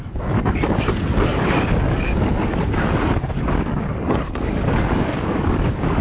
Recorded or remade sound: remade